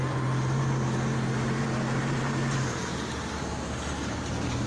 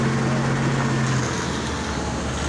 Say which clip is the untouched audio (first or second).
second